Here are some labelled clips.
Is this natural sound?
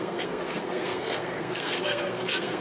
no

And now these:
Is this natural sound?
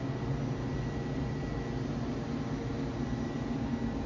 yes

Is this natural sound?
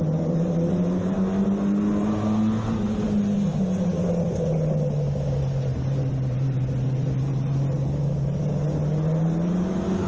yes